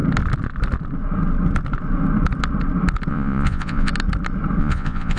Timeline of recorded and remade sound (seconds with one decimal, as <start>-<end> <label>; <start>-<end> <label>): 0.0-3.1 recorded; 3.1-3.9 remade; 3.9-4.6 recorded; 4.6-5.2 remade